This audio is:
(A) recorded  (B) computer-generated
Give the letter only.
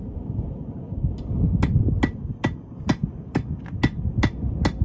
A